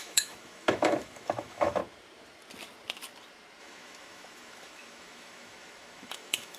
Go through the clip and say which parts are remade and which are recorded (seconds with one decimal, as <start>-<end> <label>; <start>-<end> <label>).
0.0-1.8 remade; 1.8-3.6 recorded; 3.6-6.6 remade